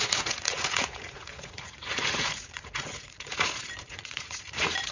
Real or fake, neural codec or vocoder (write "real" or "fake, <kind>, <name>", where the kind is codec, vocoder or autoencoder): fake, vocoder, Vocos